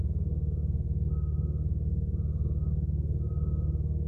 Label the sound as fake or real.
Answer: fake